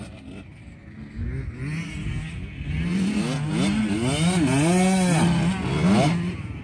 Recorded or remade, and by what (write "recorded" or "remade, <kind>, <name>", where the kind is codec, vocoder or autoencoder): recorded